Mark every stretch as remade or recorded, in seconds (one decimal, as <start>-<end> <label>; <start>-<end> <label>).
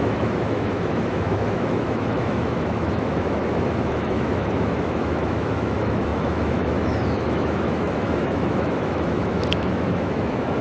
0.0-10.6 remade